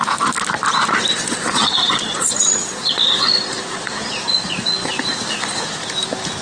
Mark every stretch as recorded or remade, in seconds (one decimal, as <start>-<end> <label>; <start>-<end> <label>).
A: 0.0-1.1 recorded; 1.1-4.9 remade; 4.9-6.4 recorded